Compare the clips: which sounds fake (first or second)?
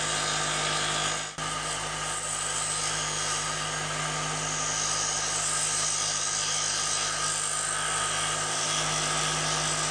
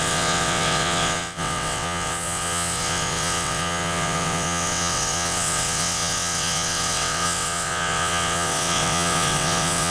second